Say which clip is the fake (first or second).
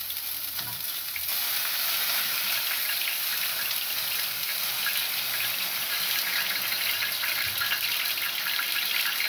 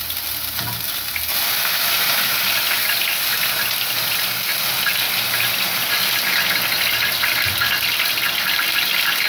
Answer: first